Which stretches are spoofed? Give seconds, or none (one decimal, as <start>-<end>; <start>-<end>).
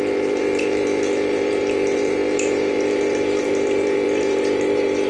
0.0-5.1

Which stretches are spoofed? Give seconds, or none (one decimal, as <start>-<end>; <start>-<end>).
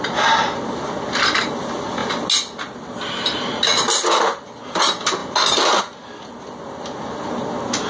none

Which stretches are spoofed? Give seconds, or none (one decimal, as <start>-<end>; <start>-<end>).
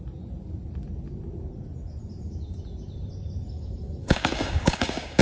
4.0-5.2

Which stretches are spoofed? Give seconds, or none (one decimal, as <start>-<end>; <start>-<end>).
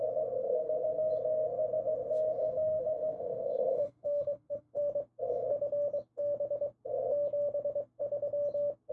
0.4-1.1; 2.4-4.8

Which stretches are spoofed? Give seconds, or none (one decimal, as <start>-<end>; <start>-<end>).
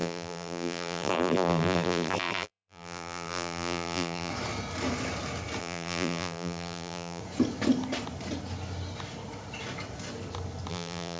0.0-4.3; 5.6-7.2; 10.7-11.2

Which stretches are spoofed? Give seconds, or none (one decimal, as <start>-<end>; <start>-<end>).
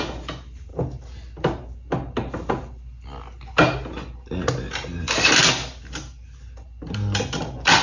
none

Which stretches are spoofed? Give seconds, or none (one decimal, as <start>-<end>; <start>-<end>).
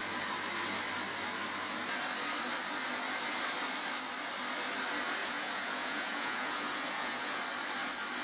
5.2-7.4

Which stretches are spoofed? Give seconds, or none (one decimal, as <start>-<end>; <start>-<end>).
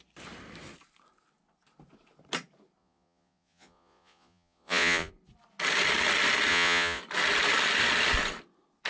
2.8-5.1; 6.5-7.0